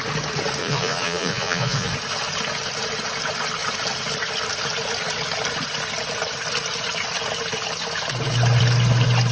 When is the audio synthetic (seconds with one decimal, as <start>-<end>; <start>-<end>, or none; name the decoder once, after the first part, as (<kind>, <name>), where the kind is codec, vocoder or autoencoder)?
0.6-1.9 (vocoder, Vocos)

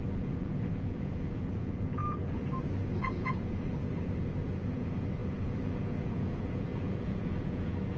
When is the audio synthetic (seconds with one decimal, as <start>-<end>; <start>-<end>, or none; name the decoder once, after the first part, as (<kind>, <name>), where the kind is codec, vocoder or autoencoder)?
0.0-8.0 (vocoder, Vocos)

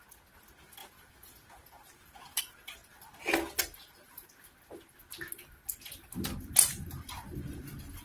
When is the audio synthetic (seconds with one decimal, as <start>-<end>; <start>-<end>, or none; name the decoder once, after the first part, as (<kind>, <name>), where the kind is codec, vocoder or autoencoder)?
0.8-2.4 (vocoder, Vocos); 3.8-4.4

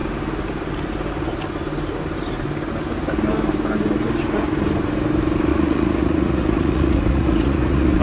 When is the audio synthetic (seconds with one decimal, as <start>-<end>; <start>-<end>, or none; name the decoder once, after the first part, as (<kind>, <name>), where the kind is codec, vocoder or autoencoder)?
5.5-8.0 (vocoder, Vocos)